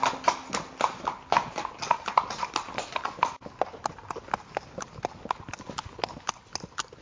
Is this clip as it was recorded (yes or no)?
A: yes